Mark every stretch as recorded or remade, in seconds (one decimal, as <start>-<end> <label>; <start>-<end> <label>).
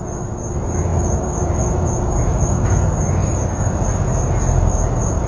0.0-0.9 recorded; 0.9-1.5 remade; 1.5-5.3 recorded